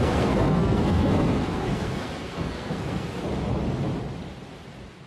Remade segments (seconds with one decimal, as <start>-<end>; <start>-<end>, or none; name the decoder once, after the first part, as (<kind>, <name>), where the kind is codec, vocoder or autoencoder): 0.0-3.2 (codec, SNAC)